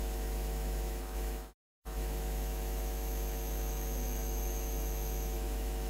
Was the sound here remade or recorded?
remade